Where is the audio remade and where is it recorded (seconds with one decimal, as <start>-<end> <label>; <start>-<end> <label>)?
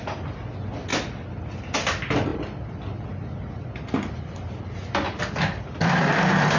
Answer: 0.0-6.6 recorded